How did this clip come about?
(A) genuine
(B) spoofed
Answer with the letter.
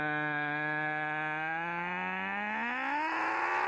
A